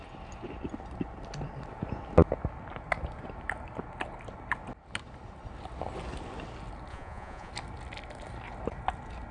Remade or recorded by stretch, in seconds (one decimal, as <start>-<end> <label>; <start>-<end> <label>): 0.0-6.9 recorded; 6.9-7.5 remade; 7.5-9.3 recorded